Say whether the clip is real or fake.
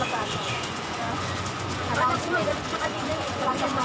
fake